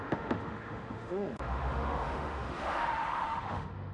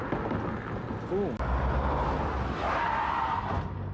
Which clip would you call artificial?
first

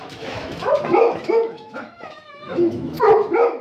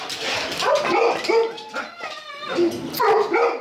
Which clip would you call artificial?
first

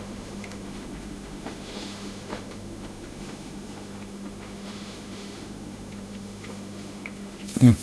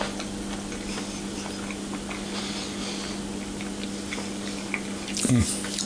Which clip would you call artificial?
first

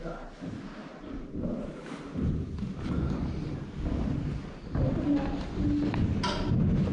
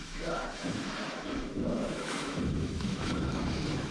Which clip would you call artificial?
second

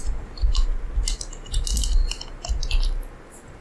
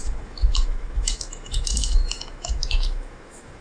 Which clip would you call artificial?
second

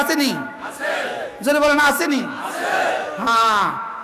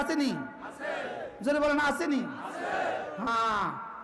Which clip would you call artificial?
first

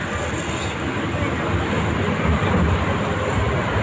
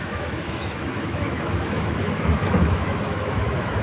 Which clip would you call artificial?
second